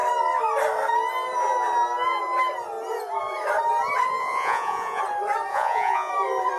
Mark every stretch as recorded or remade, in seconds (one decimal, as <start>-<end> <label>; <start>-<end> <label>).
0.0-4.2 recorded; 4.2-5.0 remade; 5.0-5.5 recorded; 5.5-6.1 remade; 6.1-6.6 recorded